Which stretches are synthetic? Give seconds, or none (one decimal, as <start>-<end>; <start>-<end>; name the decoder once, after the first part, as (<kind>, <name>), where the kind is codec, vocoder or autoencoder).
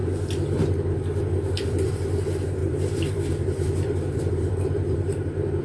1.2-5.6 (vocoder, BigVGAN v2)